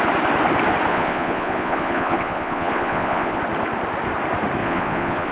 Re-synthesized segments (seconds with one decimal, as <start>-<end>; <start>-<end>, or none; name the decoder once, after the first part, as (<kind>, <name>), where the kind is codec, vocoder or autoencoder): 0.9-3.4 (vocoder, Vocos); 4.6-5.3

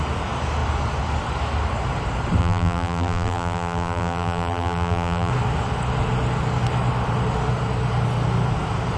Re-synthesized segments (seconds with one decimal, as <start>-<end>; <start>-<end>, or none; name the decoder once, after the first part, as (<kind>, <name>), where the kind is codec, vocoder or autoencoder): 2.4-5.3 (vocoder, BigVGAN v2)

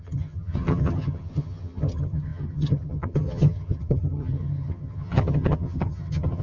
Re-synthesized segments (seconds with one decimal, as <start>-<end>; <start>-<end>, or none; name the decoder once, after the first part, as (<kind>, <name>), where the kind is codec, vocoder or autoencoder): 0.0-6.4 (vocoder, HiFi-GAN)

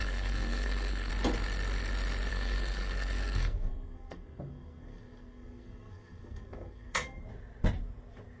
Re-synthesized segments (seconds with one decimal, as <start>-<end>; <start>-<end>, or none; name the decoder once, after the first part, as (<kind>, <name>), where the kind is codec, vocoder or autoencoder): 0.0-1.1 (codec, SNAC); 2.3-7.2

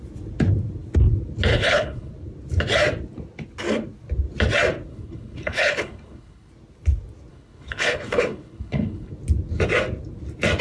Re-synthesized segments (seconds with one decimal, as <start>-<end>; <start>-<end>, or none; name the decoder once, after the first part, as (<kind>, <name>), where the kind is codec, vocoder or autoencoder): 1.5-2.1 (codec, HILCodec); 4.9-6.5; 7.3-9.1

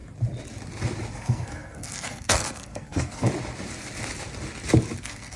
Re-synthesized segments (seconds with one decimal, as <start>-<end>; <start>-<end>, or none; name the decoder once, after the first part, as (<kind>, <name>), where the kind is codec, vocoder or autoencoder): 1.1-3.3 (codec, SNAC); 5.0-5.4

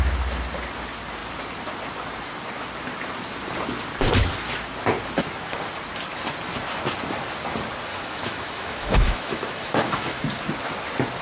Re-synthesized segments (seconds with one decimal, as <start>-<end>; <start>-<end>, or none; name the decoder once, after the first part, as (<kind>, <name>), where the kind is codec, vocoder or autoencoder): 7.9-10.2 (autoencoder, DAC-VAE)

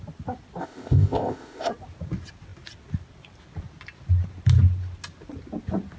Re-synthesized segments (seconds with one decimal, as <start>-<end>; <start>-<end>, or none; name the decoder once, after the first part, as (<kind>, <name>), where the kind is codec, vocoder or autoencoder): 0.6-1.7 (codec, ZipCodec)